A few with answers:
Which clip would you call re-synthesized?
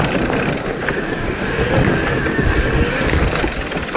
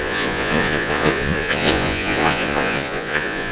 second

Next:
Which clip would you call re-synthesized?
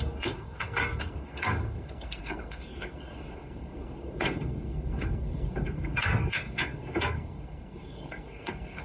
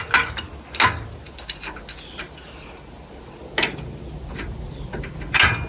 first